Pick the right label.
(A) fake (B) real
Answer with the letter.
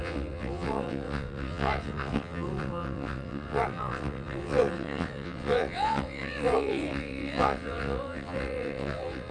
A